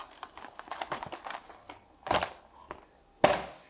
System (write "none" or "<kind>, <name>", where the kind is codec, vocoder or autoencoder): none